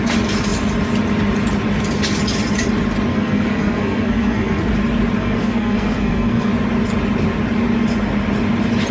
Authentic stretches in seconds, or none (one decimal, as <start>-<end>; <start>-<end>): 0.0-3.1; 4.7-5.2; 6.5-8.9